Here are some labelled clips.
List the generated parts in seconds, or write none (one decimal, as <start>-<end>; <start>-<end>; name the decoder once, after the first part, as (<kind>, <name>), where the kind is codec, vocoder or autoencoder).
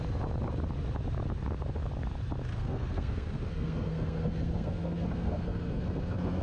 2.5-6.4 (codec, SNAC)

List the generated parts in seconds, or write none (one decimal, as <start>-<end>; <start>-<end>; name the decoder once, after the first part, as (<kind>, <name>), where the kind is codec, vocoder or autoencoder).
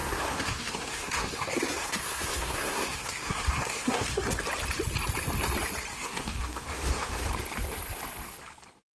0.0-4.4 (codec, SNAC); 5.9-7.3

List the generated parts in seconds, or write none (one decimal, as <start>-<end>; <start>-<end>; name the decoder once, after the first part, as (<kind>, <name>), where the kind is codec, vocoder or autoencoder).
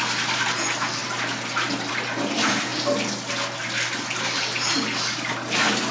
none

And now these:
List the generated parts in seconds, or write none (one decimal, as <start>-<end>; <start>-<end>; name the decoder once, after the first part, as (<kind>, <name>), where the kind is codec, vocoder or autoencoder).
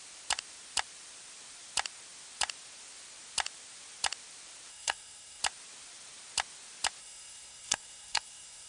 4.7-5.4 (codec, SNAC); 7.0-8.7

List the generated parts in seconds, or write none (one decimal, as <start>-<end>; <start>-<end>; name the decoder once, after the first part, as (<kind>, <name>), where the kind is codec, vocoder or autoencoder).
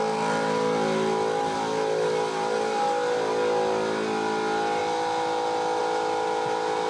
none